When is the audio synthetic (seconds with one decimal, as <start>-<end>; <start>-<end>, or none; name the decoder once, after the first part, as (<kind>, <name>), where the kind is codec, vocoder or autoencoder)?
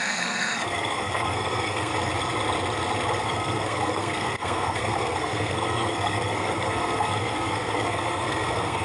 0.0-1.9 (codec, SNAC); 3.2-8.8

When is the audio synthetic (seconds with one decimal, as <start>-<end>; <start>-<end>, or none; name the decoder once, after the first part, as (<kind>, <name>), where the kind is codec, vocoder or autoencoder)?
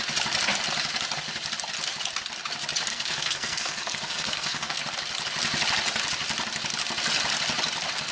2.9-4.8 (codec, SNAC)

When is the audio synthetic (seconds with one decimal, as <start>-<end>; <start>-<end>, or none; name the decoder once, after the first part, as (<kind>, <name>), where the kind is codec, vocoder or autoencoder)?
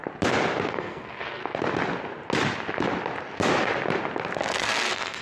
0.7-1.4 (codec, SNAC); 4.5-5.2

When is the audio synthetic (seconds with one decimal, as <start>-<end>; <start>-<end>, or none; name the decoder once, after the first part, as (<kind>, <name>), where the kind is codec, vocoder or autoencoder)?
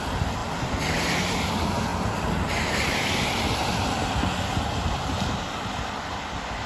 none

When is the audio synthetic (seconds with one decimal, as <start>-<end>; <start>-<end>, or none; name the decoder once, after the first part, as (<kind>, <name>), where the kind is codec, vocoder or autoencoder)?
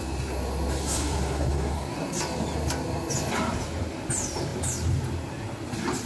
0.8-2.2 (codec, SNAC)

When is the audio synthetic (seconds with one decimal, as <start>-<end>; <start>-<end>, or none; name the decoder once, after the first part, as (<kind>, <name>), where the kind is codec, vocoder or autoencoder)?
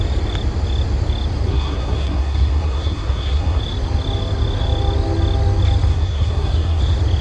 1.5-3.6 (codec, SNAC); 5.9-6.8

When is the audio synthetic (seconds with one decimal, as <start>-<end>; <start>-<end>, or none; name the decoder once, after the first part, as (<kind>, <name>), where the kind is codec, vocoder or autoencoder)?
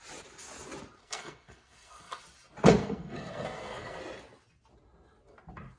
1.0-2.2 (codec, SNAC); 2.8-4.0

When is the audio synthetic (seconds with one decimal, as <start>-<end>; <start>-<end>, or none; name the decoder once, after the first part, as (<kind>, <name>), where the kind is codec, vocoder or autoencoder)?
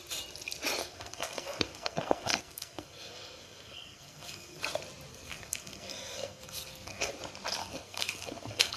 0.8-4.6 (codec, SNAC); 5.1-7.1; 7.6-8.8